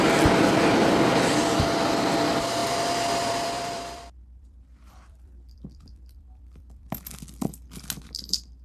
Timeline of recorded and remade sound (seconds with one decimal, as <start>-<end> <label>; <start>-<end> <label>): 0.0-2.6 recorded; 2.6-6.9 remade; 6.9-8.6 recorded